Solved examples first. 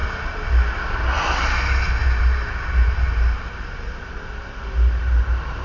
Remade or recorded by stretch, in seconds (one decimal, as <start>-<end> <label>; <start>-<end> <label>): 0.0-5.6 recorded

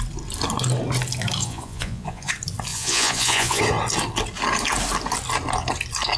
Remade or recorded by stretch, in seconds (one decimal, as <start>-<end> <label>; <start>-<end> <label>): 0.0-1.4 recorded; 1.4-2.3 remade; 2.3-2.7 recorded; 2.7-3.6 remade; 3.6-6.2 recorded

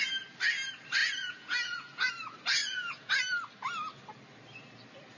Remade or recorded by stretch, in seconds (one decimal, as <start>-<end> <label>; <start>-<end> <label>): 0.0-1.0 recorded; 1.0-2.1 remade; 2.1-2.6 recorded; 2.6-3.1 remade; 3.1-5.2 recorded